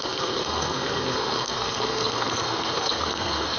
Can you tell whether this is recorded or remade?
remade